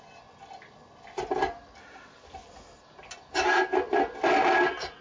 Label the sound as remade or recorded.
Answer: recorded